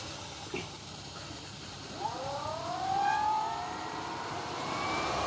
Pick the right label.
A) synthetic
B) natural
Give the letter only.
A